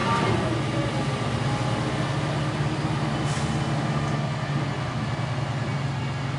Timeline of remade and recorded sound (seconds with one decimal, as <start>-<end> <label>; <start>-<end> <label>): 0.0-0.9 remade; 0.9-6.4 recorded